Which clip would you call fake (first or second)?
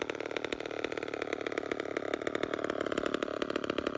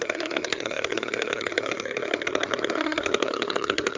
second